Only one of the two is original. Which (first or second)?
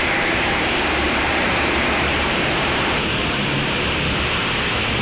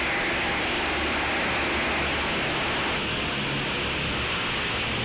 second